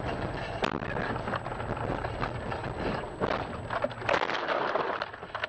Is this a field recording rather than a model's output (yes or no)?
yes